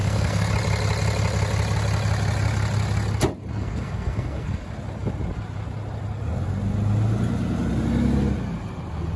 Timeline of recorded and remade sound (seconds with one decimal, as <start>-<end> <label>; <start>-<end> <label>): 0.0-0.5 remade; 0.5-3.5 recorded; 3.5-4.6 remade; 4.6-9.2 recorded